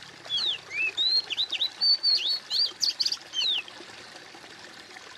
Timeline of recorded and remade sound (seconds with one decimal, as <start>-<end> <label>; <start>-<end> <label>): 0.0-5.2 recorded